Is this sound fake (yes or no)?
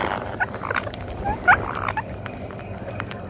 yes